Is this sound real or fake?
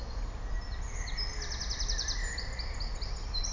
real